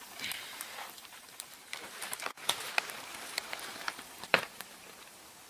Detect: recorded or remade remade